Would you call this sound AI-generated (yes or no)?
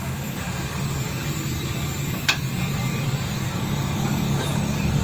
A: yes